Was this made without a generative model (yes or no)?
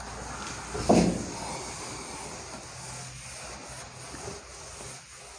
yes